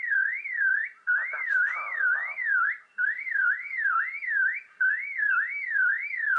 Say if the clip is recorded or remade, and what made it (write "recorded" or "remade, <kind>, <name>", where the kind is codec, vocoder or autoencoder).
recorded